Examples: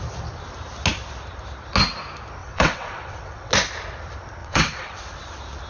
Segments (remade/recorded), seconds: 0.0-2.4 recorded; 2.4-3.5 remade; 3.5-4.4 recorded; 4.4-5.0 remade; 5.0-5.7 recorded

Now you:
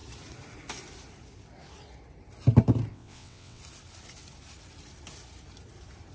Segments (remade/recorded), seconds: 0.0-2.9 recorded; 2.9-3.6 remade; 3.6-6.1 recorded